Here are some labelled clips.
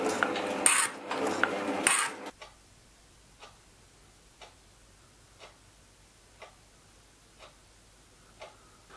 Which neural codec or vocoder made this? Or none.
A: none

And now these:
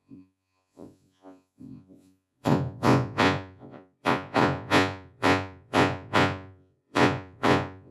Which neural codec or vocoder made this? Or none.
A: vocoder, Vocos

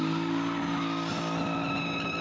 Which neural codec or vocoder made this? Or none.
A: none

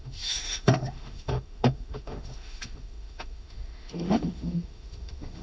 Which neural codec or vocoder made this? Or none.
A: autoencoder, DAC-VAE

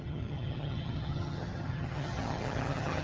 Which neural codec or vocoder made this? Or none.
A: vocoder, HiFi-GAN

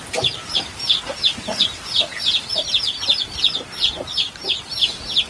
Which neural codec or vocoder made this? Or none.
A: none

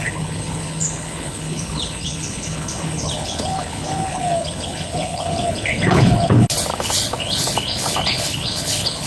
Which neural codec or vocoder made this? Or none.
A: codec, HILCodec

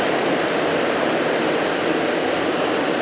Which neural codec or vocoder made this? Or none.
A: none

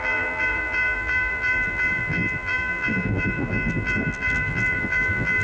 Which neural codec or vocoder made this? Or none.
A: vocoder, BigVGAN v2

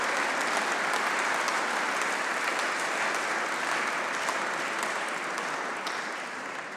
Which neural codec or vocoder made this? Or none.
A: none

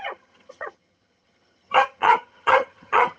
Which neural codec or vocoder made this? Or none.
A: vocoder, HiFi-GAN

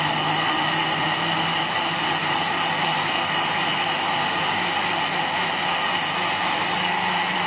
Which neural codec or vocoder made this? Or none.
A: none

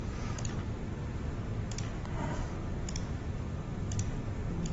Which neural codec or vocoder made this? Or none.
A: none